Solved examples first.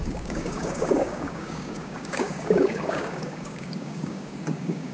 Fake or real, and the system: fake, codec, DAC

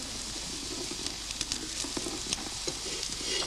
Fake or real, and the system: real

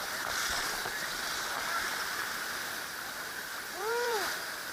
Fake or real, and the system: fake, vocoder, BigVGAN v2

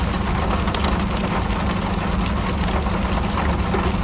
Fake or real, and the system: real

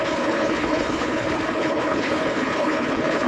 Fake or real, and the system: fake, codec, HILCodec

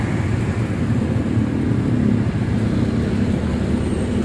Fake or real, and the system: real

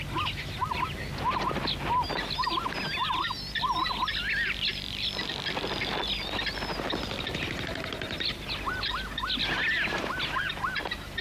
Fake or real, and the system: real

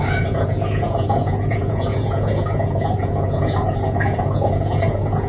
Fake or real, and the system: fake, vocoder, Vocos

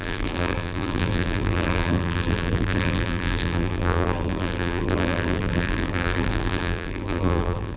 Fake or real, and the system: fake, vocoder, BigVGAN v2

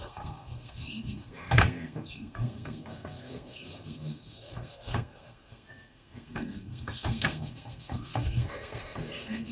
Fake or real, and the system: fake, codec, SNAC